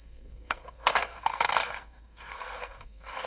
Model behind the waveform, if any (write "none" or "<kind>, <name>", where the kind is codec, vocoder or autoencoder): codec, SNAC